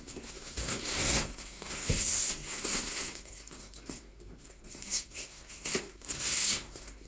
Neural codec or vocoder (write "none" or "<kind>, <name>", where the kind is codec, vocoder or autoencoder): codec, SNAC